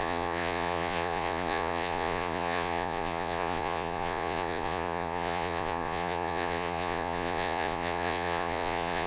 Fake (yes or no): yes